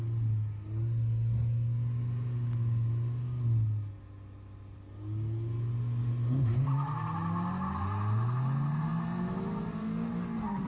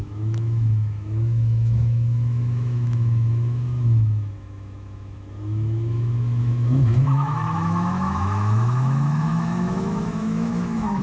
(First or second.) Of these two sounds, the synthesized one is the second